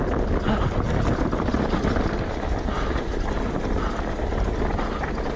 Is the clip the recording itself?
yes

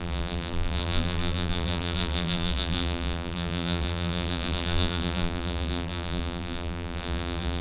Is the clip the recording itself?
no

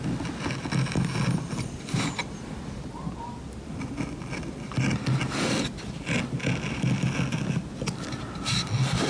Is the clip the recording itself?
yes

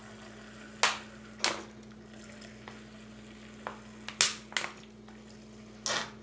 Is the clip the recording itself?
yes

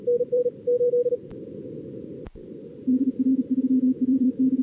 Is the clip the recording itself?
no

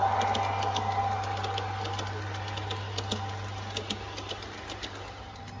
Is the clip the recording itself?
yes